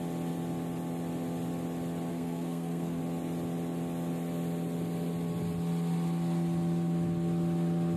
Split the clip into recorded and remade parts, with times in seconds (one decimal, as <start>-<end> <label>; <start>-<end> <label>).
0.0-2.1 recorded; 2.1-3.0 remade; 3.0-8.0 recorded

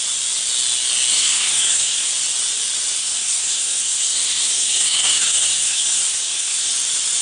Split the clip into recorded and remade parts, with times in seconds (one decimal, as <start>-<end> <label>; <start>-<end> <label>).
0.0-1.1 recorded; 1.1-2.1 remade; 2.1-3.0 recorded; 3.0-6.7 remade; 6.7-7.2 recorded